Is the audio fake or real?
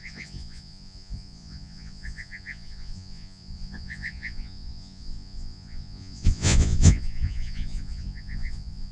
fake